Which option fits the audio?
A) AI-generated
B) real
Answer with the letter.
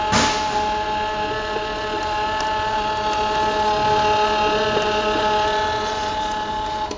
B